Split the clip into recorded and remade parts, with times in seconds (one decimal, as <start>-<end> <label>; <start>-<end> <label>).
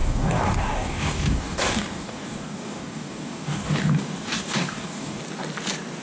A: 0.0-5.2 remade; 5.2-6.0 recorded